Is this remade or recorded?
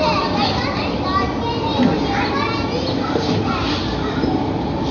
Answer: recorded